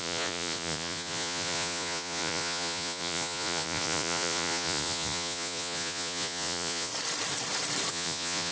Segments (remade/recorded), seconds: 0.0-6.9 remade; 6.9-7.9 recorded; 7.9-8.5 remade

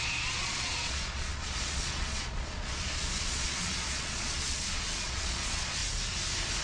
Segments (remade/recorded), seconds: 0.0-5.8 remade; 5.8-6.6 recorded